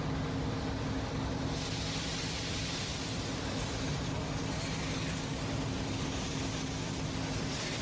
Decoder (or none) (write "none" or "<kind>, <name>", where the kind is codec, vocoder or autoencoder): none